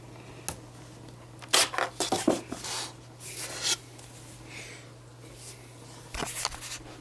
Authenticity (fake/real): real